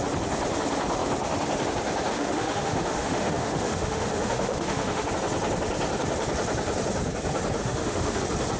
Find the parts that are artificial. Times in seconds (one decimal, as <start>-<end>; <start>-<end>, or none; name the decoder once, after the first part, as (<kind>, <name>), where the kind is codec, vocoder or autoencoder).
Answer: 2.1-5.1 (autoencoder, DAC-VAE); 7.6-8.2

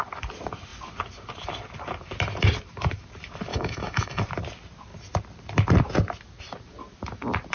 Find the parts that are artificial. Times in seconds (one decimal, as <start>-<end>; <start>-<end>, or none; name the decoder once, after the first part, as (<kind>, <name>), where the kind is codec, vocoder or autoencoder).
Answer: 3.5-4.2 (autoencoder, DAC-VAE)

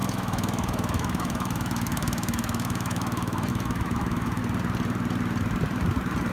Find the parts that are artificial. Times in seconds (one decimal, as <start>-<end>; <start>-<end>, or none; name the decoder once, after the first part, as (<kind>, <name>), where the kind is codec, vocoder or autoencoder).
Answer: 0.0-4.4 (autoencoder, DAC-VAE)

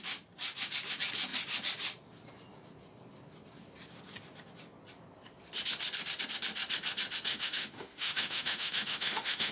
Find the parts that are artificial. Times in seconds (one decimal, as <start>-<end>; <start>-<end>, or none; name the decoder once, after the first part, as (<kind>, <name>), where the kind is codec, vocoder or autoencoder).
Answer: 7.3-9.5 (autoencoder, DAC-VAE)

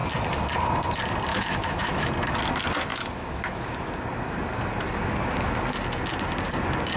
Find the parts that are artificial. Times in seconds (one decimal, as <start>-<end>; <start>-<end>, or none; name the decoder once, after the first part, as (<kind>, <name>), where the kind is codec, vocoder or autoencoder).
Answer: 1.3-2.1 (autoencoder, DAC-VAE); 2.9-3.9

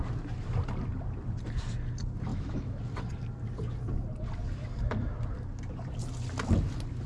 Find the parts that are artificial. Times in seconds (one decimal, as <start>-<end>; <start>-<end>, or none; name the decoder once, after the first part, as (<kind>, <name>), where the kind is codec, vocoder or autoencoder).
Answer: 2.3-2.8 (autoencoder, DAC-VAE)

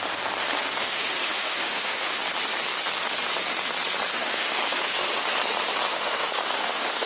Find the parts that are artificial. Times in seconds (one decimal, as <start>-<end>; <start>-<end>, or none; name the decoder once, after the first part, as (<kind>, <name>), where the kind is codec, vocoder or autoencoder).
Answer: 0.8-2.2 (autoencoder, DAC-VAE); 4.1-4.6; 5.9-7.1

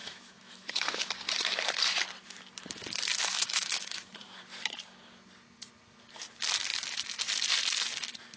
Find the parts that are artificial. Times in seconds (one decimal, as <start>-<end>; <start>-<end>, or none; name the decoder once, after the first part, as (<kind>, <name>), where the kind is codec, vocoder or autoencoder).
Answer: 0.0-1.1 (autoencoder, DAC-VAE); 3.2-4.4